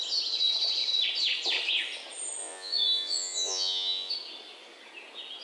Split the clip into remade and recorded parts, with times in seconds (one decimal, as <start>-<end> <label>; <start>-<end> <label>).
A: 0.0-2.4 recorded; 2.4-4.1 remade; 4.1-5.4 recorded